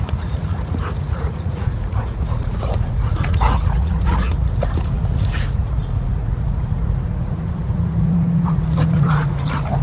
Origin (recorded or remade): remade